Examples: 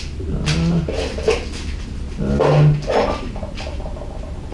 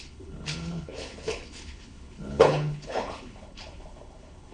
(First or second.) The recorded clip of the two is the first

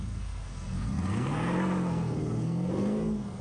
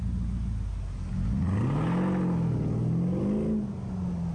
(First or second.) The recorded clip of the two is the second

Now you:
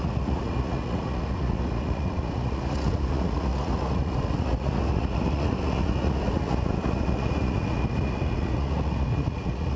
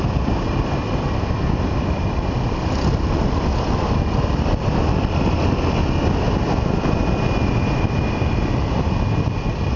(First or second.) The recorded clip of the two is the second